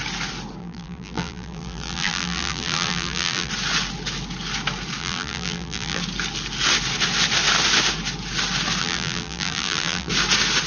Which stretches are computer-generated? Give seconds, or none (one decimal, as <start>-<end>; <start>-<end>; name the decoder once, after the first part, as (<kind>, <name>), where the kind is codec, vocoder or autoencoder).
0.6-3.5 (vocoder, BigVGAN v2); 5.0-6.0; 8.8-10.1